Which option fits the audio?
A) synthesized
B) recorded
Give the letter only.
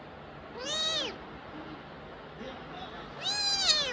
B